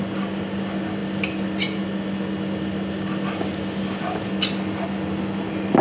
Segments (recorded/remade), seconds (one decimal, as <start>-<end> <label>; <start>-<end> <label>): 0.0-5.8 recorded